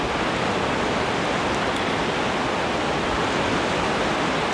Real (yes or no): yes